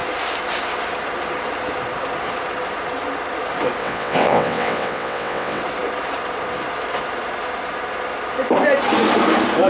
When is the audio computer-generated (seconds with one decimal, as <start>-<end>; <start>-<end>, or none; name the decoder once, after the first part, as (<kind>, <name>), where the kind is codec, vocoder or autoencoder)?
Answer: 3.8-5.6 (vocoder, WaveNeXt)